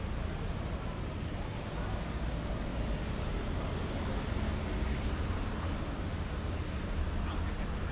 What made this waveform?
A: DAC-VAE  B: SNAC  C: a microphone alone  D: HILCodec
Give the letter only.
C